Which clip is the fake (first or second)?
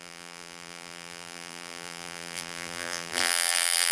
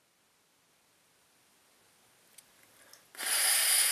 first